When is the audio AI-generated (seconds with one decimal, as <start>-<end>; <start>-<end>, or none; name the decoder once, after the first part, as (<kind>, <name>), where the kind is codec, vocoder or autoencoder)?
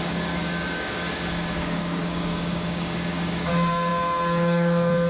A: 0.0-5.1 (codec, DAC)